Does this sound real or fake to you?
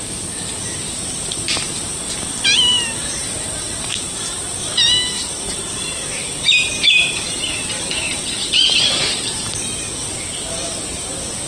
fake